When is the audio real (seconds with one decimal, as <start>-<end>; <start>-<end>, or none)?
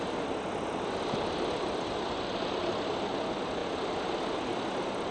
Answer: 0.0-5.1